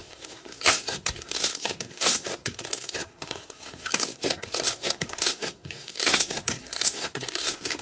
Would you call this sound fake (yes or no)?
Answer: yes